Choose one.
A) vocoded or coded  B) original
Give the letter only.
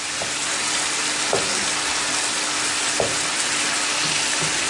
B